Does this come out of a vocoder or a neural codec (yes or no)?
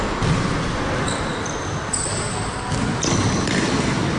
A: no